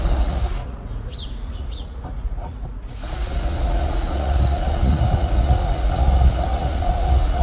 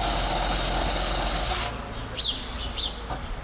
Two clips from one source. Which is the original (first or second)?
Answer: second